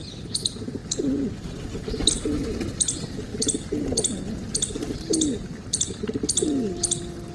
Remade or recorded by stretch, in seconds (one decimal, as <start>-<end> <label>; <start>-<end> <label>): 0.0-7.3 recorded